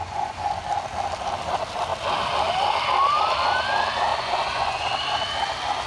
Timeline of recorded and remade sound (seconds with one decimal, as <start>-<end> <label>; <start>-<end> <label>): 0.0-0.6 remade; 0.6-4.1 recorded; 4.1-4.8 remade; 4.8-5.9 recorded